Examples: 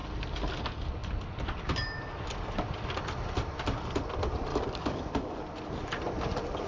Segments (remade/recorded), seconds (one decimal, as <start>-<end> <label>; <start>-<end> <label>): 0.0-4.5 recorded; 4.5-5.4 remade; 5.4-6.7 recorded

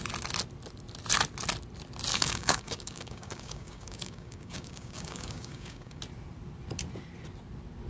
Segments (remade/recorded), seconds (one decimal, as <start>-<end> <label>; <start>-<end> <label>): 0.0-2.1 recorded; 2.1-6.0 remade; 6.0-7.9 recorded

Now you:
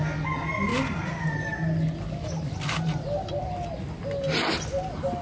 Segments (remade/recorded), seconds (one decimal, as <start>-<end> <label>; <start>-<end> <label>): 0.0-5.2 recorded

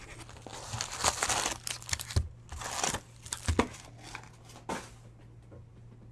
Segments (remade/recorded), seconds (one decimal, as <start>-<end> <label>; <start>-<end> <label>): 0.0-6.1 recorded

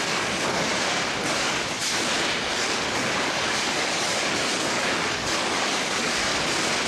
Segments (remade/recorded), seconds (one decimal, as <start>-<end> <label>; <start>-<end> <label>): 0.0-0.7 remade; 0.7-1.3 recorded; 1.3-1.8 remade; 1.8-2.4 recorded; 2.4-6.3 remade; 6.3-6.9 recorded

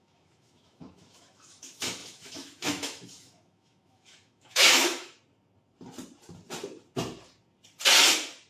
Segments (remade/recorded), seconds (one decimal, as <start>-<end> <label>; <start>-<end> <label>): 0.0-5.2 remade; 5.2-8.5 recorded

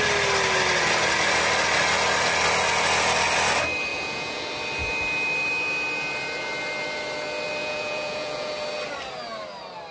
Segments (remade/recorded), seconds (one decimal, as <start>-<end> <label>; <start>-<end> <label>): 0.0-3.9 recorded; 3.9-4.4 remade; 4.4-7.6 recorded; 7.6-8.5 remade; 8.5-9.9 recorded